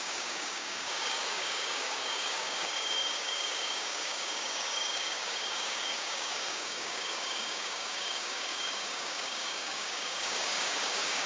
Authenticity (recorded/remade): remade